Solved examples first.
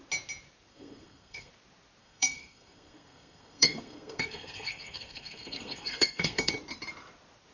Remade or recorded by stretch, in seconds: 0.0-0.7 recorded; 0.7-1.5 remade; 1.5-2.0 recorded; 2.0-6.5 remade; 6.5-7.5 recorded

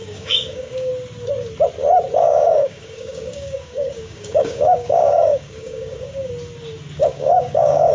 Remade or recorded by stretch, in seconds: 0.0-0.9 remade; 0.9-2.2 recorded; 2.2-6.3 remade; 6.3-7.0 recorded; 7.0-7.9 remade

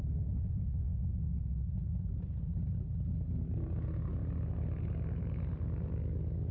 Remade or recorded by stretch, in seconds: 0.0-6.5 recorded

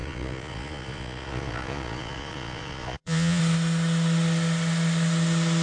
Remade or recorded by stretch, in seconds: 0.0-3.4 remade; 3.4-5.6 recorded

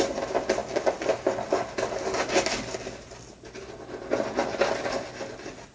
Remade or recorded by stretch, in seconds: 0.0-5.7 recorded

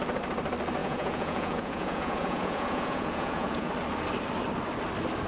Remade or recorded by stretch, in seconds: 0.0-0.8 recorded; 0.8-3.7 remade; 3.7-5.3 recorded

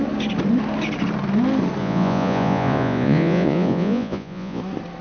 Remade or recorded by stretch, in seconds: 0.0-1.8 recorded; 1.8-4.6 remade; 4.6-5.0 recorded